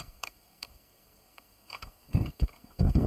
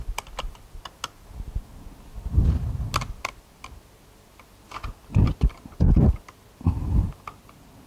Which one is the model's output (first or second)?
first